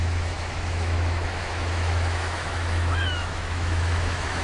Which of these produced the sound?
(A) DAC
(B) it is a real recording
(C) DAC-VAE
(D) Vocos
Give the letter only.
C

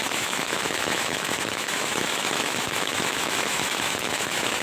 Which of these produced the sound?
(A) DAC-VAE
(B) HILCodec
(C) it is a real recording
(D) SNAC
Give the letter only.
A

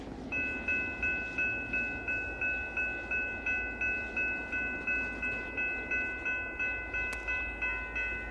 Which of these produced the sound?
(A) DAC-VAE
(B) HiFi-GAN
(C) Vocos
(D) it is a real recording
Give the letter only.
D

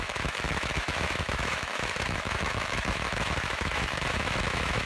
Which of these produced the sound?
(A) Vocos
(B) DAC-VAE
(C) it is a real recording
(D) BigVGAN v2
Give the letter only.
B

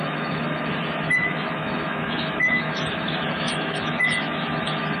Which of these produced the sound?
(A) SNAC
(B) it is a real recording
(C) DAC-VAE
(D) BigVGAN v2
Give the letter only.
C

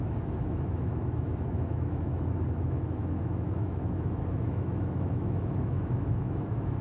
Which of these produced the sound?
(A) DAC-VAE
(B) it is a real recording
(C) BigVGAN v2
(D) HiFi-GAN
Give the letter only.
A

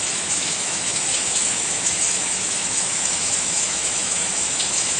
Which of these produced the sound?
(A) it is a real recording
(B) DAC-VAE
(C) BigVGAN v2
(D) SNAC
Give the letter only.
B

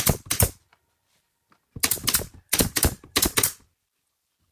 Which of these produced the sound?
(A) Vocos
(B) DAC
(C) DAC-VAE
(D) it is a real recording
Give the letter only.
D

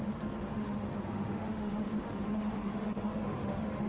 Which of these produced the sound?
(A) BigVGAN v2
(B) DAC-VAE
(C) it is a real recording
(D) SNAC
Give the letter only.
B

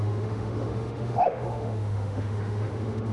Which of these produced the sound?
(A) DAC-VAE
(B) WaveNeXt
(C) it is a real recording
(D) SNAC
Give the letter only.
A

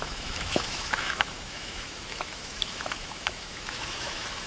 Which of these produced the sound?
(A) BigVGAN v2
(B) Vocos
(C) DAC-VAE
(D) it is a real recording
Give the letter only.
C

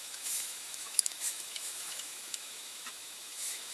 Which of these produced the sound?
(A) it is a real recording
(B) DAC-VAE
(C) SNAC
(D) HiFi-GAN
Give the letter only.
B